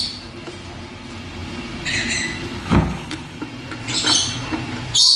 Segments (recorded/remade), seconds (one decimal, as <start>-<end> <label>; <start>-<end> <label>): 0.0-2.6 recorded; 2.6-3.4 remade; 3.4-5.2 recorded